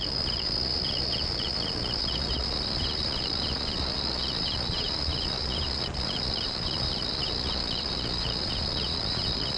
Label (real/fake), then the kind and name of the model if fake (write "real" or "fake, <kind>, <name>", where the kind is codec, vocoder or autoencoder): fake, vocoder, Vocos